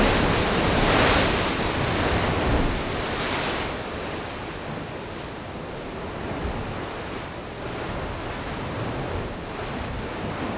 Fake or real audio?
real